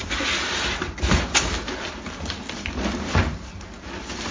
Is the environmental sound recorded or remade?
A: recorded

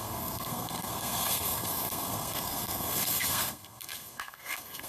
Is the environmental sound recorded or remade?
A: remade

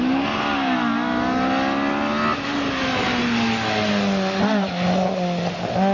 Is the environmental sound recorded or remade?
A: recorded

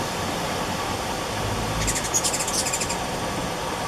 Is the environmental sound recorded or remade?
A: recorded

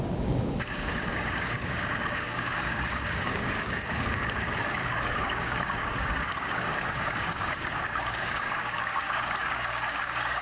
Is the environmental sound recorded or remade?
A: remade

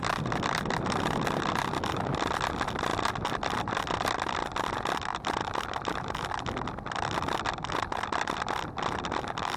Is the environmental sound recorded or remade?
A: recorded